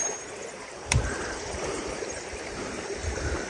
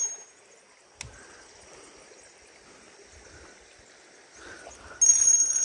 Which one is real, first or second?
second